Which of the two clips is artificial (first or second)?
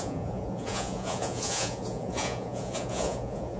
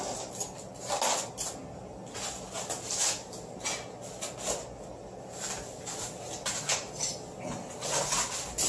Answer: first